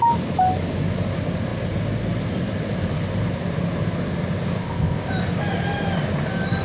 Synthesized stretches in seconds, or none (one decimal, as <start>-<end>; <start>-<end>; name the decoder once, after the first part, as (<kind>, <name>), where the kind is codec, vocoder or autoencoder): 4.6-5.1 (codec, ZipCodec)